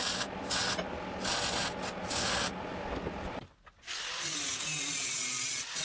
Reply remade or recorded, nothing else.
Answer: recorded